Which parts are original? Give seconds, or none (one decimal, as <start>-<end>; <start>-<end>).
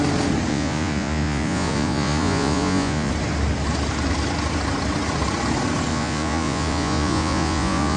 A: 0.0-0.5; 3.1-5.9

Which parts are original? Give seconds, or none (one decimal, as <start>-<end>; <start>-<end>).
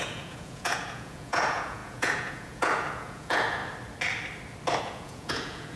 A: 3.6-4.8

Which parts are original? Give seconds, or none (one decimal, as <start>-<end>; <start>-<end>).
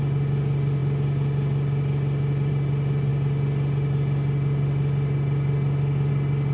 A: 0.0-6.5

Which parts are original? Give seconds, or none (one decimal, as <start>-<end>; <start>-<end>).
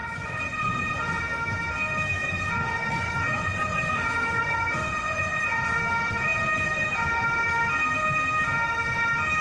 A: 1.2-2.2; 5.8-9.4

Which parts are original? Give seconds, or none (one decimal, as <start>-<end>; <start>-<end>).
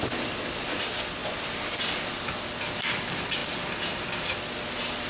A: 0.0-5.1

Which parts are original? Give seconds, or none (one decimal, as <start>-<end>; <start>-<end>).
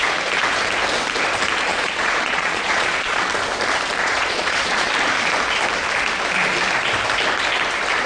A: 0.0-1.7; 3.3-4.0; 4.9-8.1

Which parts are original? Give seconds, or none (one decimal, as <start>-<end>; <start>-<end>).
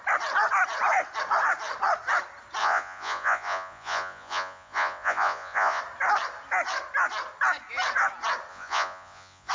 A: 0.0-2.6; 5.8-8.5